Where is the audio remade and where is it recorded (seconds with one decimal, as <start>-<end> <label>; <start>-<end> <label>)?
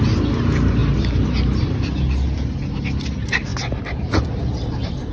0.0-0.8 recorded; 0.8-2.5 remade; 2.5-3.5 recorded; 3.5-4.4 remade; 4.4-5.1 recorded